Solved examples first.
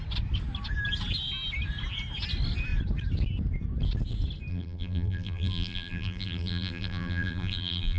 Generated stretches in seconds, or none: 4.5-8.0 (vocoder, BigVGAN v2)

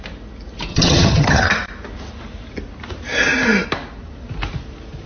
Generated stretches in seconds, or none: 0.7-1.5 (vocoder, HiFi-GAN)

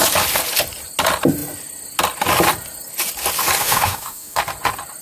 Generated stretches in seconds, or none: 3.6-4.4 (autoencoder, DAC-VAE)

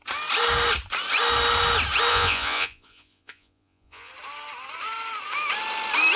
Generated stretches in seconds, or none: 2.1-4.1 (vocoder, Vocos)